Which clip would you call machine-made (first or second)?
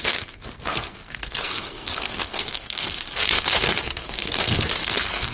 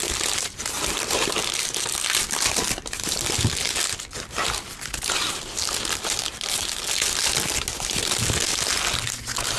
first